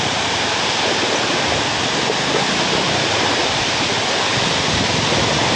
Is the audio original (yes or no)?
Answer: no